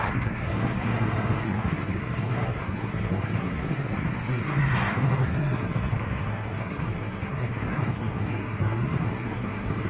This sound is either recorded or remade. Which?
remade